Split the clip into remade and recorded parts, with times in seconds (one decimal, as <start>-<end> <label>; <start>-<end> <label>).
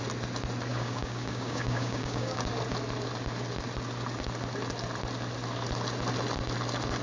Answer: 0.0-0.7 recorded; 0.7-2.5 remade; 2.5-7.0 recorded